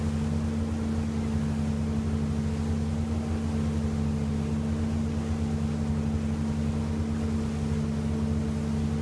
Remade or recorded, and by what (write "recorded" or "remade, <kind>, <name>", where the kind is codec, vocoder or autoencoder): recorded